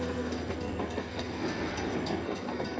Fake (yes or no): yes